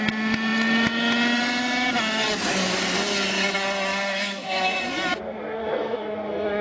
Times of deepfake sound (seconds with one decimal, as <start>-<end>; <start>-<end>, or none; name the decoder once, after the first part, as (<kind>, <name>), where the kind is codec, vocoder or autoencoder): 3.9-4.8 (autoencoder, DAC-VAE); 5.6-6.6